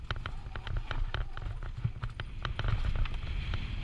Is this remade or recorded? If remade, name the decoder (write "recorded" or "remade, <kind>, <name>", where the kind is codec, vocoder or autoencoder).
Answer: recorded